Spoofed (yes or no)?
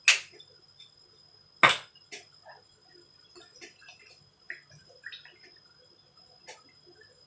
no